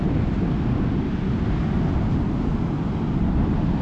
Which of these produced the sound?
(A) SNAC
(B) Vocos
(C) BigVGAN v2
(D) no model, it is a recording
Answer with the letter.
D